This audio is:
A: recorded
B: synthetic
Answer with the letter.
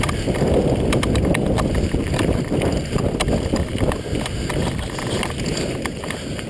A